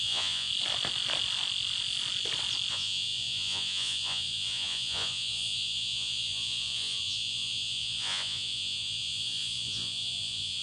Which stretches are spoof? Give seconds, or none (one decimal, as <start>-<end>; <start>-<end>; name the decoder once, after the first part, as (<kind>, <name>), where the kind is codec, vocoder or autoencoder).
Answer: 0.0-0.5 (vocoder, Vocos); 2.7-10.6